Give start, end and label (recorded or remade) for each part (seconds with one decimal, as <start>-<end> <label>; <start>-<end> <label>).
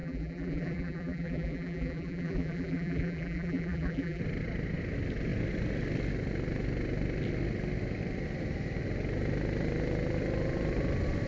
0.0-4.2 remade; 4.2-11.3 recorded